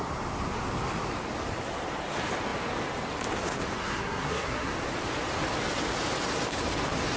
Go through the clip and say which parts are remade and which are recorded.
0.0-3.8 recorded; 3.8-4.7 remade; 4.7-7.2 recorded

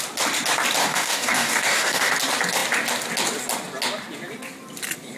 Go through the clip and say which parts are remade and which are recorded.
0.0-0.8 recorded; 0.8-2.1 remade; 2.1-5.2 recorded

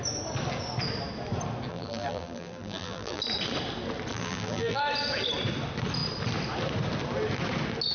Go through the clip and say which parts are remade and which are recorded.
0.0-1.7 recorded; 1.7-3.2 remade; 3.2-4.1 recorded; 4.1-4.8 remade; 4.8-7.9 recorded

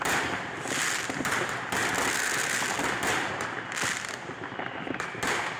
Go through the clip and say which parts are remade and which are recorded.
0.0-5.6 recorded